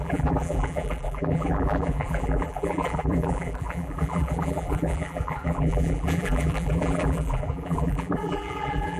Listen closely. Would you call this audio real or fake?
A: fake